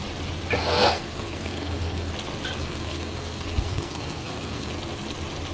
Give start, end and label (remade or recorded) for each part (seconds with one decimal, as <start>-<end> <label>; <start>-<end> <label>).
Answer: 0.0-0.6 recorded; 0.6-2.1 remade; 2.1-2.6 recorded; 2.6-4.7 remade; 4.7-5.5 recorded